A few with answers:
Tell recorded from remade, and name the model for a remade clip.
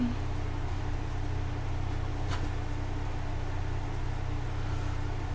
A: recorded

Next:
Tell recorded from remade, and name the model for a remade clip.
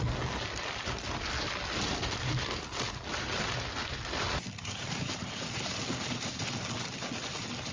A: recorded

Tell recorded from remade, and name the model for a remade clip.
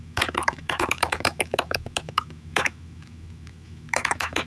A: remade, autoencoder, DAC-VAE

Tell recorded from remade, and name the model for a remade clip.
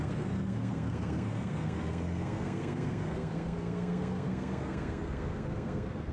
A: remade, codec, SNAC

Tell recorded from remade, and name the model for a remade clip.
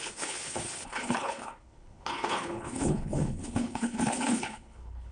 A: remade, codec, HILCodec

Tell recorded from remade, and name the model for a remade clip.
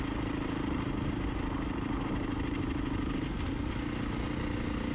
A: recorded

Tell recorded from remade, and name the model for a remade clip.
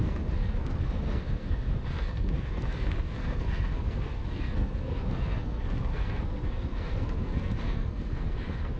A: remade, codec, SNAC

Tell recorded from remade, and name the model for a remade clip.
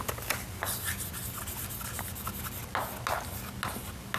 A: recorded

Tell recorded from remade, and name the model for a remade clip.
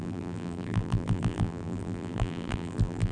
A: remade, vocoder, BigVGAN v2